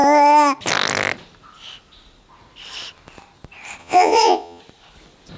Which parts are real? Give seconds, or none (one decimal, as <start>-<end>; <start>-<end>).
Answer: 0.0-3.8; 4.6-5.4